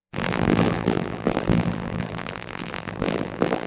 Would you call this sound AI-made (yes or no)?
yes